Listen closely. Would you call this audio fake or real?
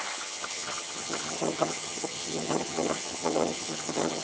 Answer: fake